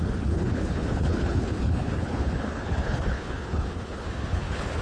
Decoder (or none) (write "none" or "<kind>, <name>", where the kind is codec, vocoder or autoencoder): codec, HILCodec